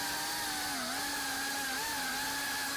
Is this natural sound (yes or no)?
yes